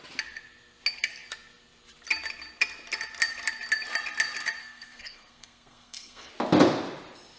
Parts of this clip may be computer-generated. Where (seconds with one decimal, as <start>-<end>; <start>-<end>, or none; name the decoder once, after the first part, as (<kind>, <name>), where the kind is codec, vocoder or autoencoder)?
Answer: 4.6-6.3 (codec, SNAC)